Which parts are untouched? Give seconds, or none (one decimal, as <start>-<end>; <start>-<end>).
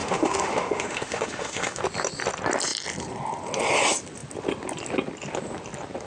1.8-6.1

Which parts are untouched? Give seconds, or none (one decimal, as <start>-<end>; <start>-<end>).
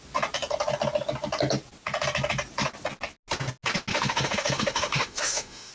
0.0-3.9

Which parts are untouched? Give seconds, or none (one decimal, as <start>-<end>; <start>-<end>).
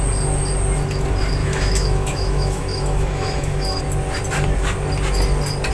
0.0-1.4; 3.8-5.7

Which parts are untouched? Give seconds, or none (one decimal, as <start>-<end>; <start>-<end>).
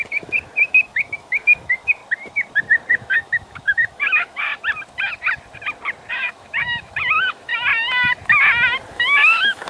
2.0-3.0; 4.5-6.1; 7.5-8.9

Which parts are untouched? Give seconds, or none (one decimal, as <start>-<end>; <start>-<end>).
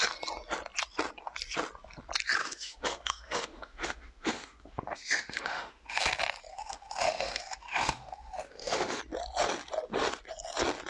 0.0-2.4; 6.0-6.5; 9.0-10.9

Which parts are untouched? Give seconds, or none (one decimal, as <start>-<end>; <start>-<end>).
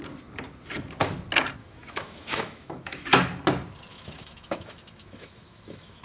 0.0-1.6; 3.1-3.9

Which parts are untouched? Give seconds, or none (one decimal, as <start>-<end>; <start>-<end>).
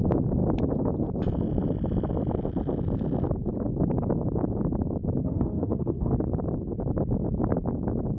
0.0-5.2; 6.1-8.2